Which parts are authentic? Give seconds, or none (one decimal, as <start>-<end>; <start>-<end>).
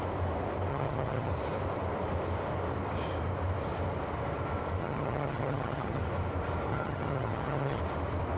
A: 0.0-0.7; 1.3-4.8; 6.0-6.7; 7.8-8.4